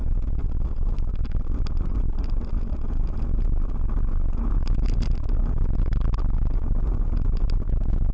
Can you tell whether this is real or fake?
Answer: real